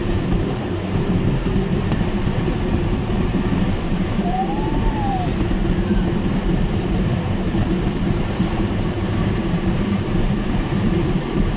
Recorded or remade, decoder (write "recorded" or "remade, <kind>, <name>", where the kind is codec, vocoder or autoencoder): remade, vocoder, BigVGAN v2